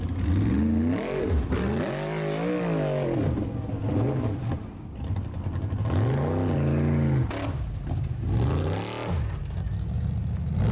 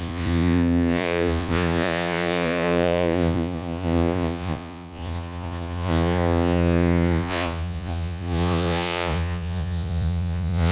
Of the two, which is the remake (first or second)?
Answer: second